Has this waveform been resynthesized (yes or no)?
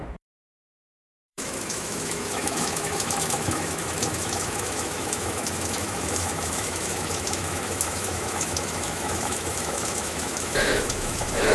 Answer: yes